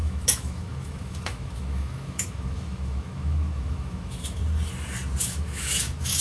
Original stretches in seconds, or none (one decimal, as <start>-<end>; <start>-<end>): 4.4-5.2

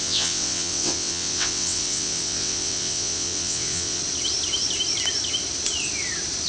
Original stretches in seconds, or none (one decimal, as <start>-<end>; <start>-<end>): 4.0-6.5

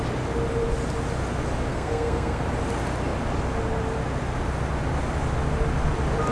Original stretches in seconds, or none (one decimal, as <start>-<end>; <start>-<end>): 0.0-1.7; 2.4-6.3

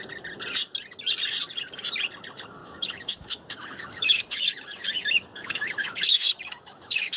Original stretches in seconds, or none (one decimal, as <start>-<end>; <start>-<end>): 0.0-2.6